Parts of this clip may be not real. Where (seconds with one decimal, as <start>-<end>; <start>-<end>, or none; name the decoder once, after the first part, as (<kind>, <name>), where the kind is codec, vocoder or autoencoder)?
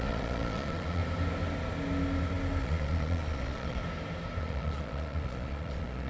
0.0-1.0 (vocoder, Vocos); 2.6-3.8; 4.4-6.1